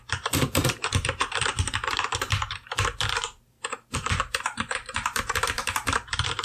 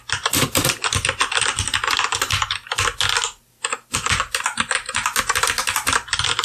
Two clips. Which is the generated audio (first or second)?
first